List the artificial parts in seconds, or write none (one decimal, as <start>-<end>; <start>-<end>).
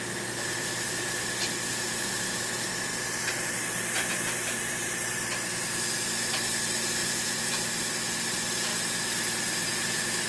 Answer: 7.0-7.6